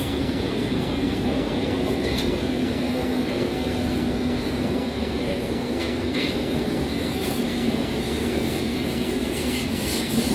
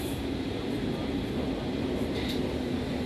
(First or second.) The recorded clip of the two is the second